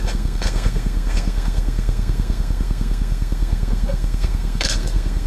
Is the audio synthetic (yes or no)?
yes